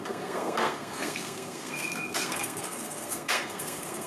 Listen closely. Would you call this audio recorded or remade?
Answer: remade